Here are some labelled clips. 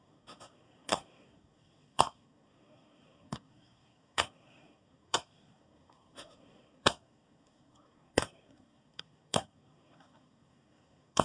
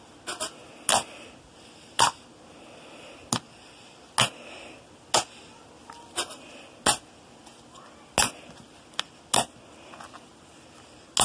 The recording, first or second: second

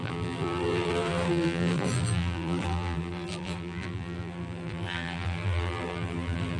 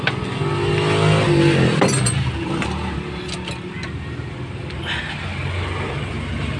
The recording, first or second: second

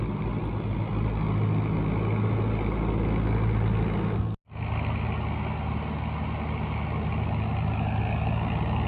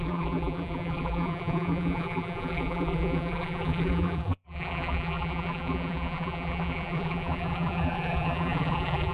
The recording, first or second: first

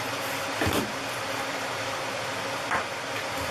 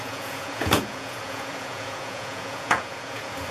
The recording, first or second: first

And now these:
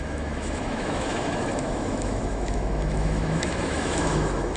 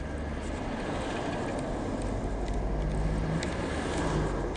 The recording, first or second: second